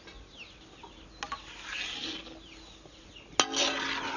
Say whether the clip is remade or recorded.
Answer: recorded